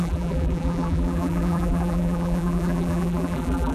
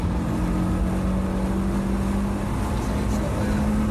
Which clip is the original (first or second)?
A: second